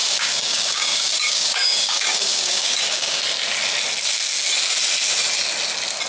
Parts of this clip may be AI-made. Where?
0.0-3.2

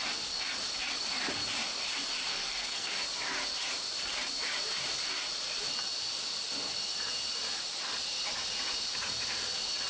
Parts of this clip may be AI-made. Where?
2.3-2.9

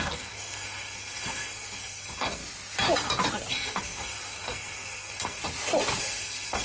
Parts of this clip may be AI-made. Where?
0.0-2.4; 3.5-5.4; 6.0-6.6

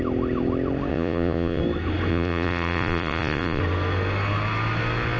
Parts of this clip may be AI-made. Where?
0.9-1.6; 2.1-3.6